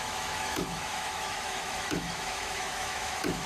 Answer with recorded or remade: remade